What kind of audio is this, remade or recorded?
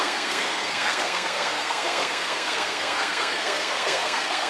remade